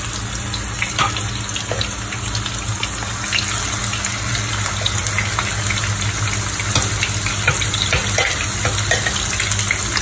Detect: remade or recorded recorded